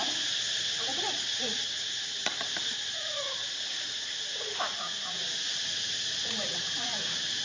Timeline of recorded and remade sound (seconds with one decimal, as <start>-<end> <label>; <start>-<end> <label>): 0.0-2.2 remade; 2.2-2.9 recorded; 2.9-7.4 remade